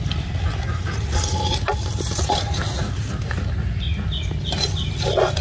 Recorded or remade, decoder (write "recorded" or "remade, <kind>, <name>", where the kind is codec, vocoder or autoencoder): recorded